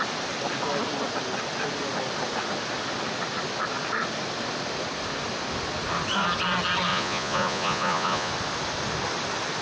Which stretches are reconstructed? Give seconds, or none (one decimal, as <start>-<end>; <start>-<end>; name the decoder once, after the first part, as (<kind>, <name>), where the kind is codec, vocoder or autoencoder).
6.9-8.3 (vocoder, Vocos)